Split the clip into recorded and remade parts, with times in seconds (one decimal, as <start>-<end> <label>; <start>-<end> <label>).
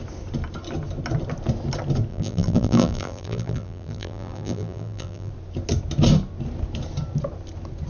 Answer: 0.0-2.1 recorded; 2.1-5.3 remade; 5.3-7.9 recorded